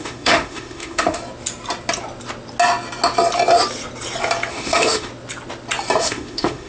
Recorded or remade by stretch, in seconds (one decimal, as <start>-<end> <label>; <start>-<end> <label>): 0.0-1.2 remade; 1.2-4.5 recorded; 4.5-5.1 remade; 5.1-6.0 recorded; 6.0-6.7 remade